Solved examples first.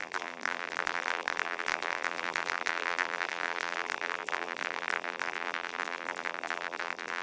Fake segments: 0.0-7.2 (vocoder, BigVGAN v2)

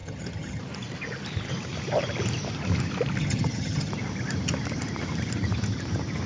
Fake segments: 0.0-0.6 (vocoder, HiFi-GAN); 3.2-3.9